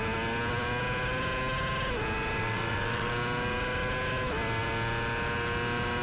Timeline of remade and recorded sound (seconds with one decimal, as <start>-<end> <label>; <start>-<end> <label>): 0.0-2.4 recorded; 2.4-3.1 remade; 3.1-6.0 recorded